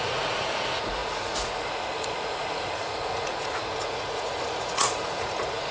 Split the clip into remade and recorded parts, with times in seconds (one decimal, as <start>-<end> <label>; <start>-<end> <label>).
0.0-5.7 remade